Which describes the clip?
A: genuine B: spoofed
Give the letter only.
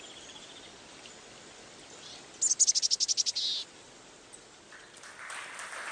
A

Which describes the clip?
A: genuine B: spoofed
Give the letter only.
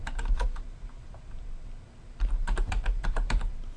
B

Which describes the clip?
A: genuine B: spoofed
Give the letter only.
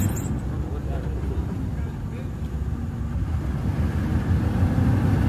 A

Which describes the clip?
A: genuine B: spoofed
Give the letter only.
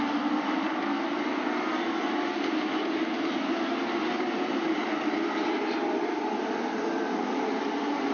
B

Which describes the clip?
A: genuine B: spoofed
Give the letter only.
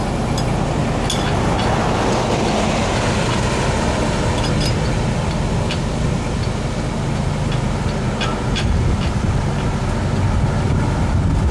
A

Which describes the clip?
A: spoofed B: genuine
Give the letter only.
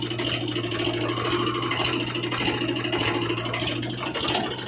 B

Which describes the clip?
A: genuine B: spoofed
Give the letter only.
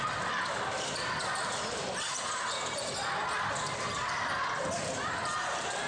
B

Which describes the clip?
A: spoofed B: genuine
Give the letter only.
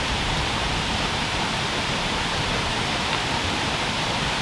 A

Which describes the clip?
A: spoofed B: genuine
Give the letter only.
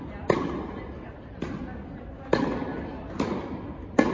B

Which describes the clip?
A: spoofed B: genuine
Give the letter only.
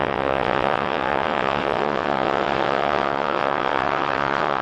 A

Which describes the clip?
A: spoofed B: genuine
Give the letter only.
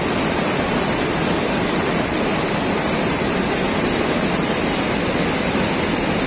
B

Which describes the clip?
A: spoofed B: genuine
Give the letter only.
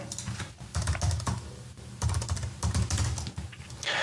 B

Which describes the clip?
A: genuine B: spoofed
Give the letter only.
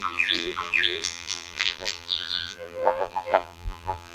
B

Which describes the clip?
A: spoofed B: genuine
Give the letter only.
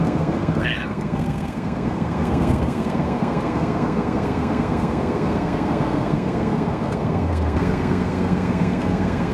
A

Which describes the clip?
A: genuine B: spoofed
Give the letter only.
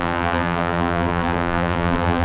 B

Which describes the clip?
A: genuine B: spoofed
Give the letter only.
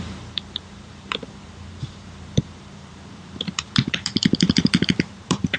B